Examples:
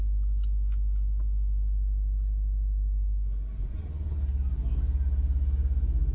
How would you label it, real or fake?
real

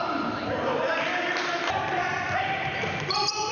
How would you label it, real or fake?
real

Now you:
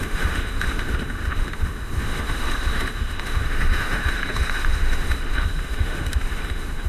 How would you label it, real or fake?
fake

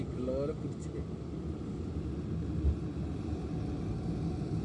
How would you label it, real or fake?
real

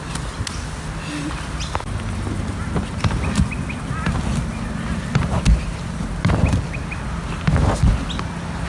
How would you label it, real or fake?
real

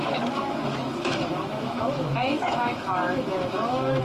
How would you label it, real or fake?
fake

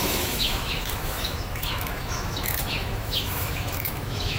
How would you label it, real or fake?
fake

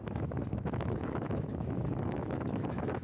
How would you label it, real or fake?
fake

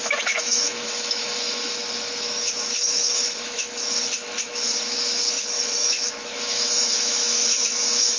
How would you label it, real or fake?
fake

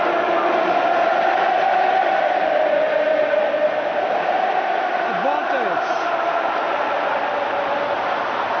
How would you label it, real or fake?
real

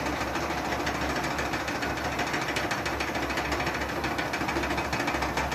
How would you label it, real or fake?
real